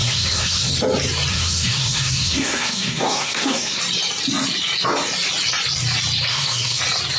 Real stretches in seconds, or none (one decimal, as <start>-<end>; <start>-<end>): 0.7-1.3; 3.8-6.3; 6.8-7.2